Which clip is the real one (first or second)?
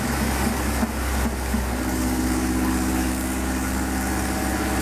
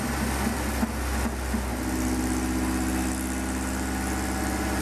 second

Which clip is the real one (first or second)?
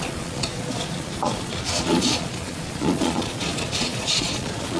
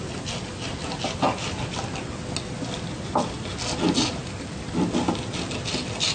second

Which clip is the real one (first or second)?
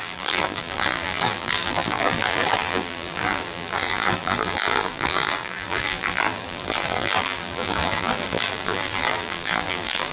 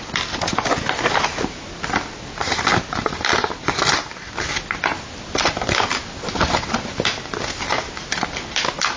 second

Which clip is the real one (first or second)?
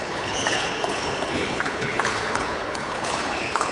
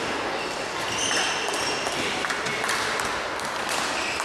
second